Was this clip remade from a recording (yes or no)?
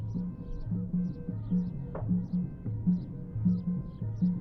no